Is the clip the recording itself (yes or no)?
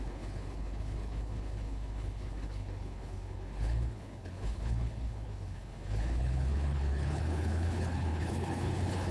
no